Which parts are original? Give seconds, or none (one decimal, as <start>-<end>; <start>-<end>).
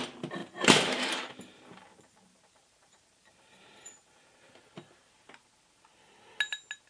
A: 0.0-0.4; 4.5-6.9